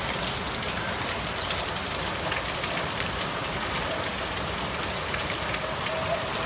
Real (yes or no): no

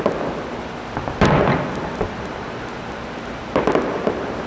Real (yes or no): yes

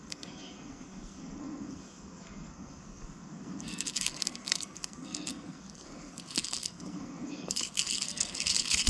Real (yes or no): no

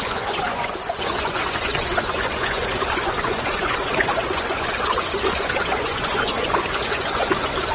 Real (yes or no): no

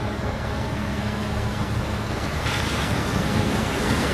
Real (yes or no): no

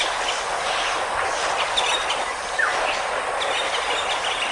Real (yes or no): yes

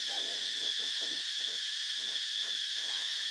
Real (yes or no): no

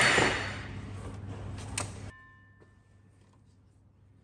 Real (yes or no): yes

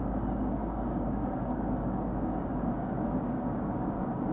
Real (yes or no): no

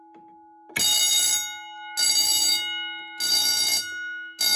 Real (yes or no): yes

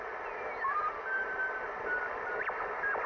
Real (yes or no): yes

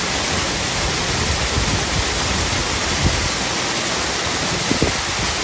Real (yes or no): yes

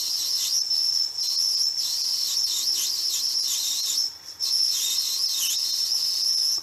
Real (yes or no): yes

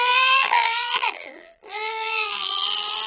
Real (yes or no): no